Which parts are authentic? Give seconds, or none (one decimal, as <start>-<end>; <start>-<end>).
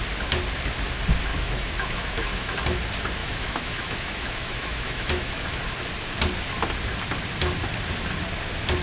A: 0.0-1.3; 2.5-3.2; 5.6-8.8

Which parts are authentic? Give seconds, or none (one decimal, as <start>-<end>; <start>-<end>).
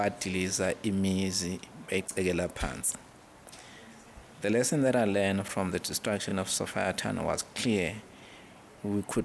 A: 0.0-9.2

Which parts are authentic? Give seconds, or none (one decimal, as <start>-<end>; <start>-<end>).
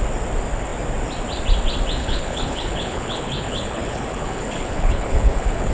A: 0.0-2.0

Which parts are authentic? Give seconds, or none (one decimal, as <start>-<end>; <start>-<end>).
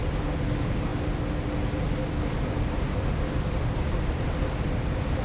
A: 0.0-5.2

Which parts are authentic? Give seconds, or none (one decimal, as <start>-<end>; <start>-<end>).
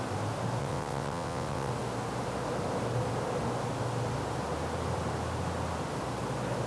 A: 0.0-0.6; 1.7-6.7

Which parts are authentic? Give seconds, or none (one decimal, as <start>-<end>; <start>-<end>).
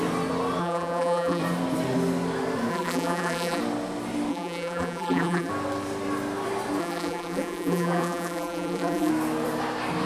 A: 0.0-0.6; 1.4-2.7; 3.6-4.3; 5.5-6.8; 9.1-10.1